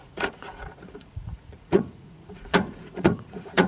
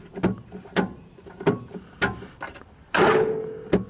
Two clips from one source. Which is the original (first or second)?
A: second